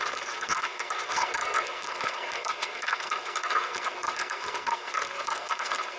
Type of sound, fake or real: fake